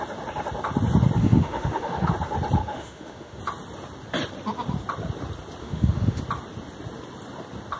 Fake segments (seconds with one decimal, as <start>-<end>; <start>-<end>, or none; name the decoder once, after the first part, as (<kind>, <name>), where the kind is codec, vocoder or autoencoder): 1.2-2.1 (autoencoder, DAC-VAE); 2.6-3.4; 5.6-6.2